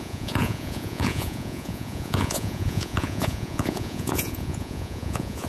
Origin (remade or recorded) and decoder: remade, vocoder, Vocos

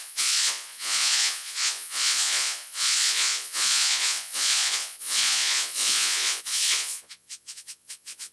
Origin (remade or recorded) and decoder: remade, vocoder, Vocos